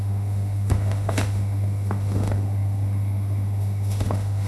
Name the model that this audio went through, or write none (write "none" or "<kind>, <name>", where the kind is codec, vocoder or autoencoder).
autoencoder, DAC-VAE